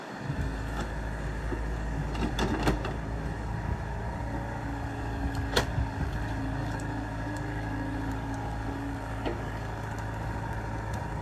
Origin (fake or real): fake